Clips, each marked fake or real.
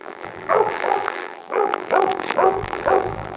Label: fake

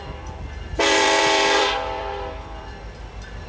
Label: fake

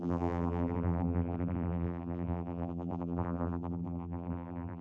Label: fake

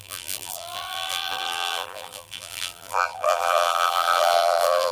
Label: fake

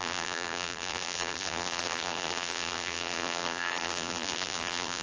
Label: fake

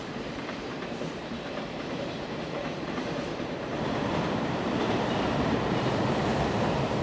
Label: fake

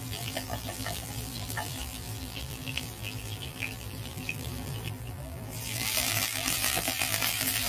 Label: fake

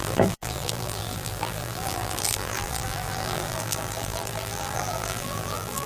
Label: fake